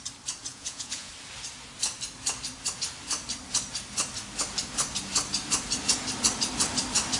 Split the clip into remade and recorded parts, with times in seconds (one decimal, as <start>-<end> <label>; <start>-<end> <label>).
0.0-0.5 recorded; 0.5-1.1 remade; 1.1-7.2 recorded